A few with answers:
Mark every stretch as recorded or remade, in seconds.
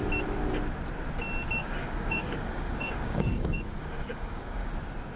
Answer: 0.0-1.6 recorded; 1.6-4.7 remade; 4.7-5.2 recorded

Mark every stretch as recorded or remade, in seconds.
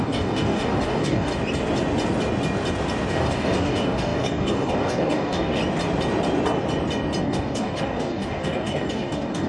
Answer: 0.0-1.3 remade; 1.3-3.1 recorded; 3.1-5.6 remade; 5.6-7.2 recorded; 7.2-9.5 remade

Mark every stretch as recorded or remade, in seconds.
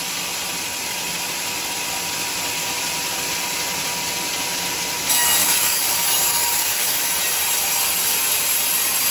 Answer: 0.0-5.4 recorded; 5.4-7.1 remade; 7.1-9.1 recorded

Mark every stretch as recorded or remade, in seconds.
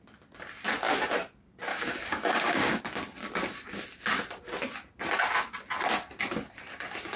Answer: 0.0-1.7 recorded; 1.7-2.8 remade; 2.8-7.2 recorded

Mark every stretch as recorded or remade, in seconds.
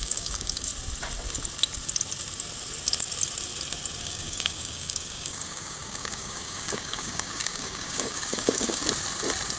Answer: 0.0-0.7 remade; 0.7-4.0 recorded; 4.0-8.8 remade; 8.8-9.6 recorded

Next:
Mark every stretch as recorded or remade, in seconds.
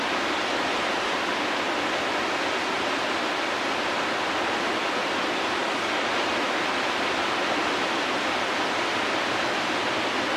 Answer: 0.0-5.6 recorded; 5.6-6.1 remade; 6.1-10.4 recorded